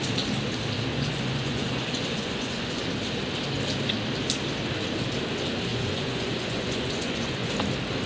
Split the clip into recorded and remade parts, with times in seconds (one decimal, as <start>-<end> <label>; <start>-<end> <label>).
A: 0.0-0.9 recorded; 0.9-2.8 remade; 2.8-5.7 recorded; 5.7-7.5 remade; 7.5-8.1 recorded